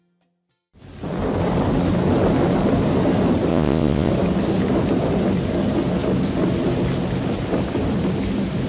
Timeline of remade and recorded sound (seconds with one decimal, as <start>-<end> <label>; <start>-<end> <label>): 0.0-3.5 recorded; 3.5-4.1 remade; 4.1-8.7 recorded